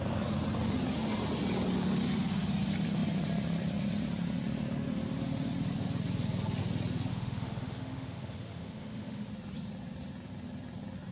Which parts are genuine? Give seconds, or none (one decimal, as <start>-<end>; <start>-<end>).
0.0-7.1; 9.3-11.1